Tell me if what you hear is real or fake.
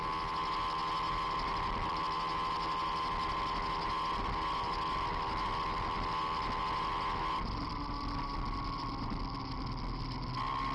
real